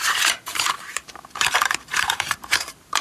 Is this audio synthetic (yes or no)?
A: yes